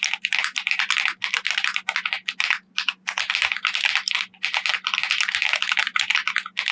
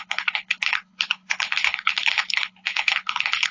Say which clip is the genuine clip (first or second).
first